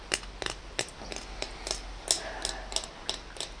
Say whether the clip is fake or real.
real